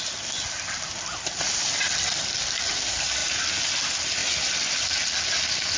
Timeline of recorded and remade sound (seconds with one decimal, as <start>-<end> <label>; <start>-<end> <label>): 0.0-5.8 recorded